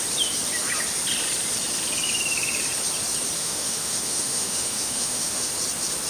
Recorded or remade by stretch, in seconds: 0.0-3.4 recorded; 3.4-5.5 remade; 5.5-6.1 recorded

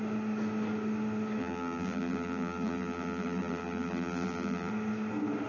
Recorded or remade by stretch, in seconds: 0.0-1.4 recorded; 1.4-4.7 remade; 4.7-5.5 recorded

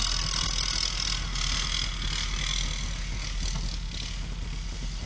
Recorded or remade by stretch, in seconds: 0.0-5.1 recorded

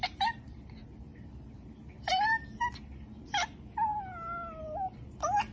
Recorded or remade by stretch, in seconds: 0.0-1.1 recorded; 1.1-2.6 remade; 2.6-5.5 recorded

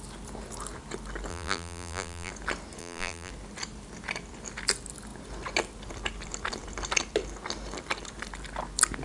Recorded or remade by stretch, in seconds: 0.0-1.3 recorded; 1.3-2.3 remade; 2.3-2.8 recorded; 2.8-3.3 remade; 3.3-9.0 recorded